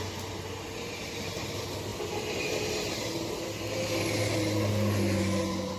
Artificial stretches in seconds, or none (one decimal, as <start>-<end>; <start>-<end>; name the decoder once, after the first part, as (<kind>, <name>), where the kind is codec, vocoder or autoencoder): none

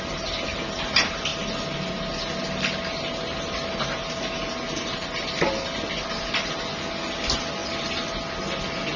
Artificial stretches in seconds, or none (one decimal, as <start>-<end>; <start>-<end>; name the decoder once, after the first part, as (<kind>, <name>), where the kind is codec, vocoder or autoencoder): none